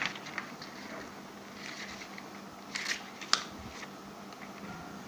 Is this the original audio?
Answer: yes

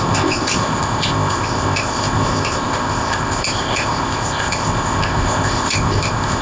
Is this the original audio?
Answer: no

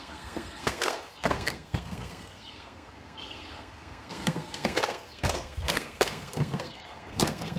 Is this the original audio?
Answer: no